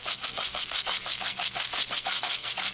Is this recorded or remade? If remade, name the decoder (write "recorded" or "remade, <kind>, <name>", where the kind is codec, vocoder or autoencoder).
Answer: remade, codec, SNAC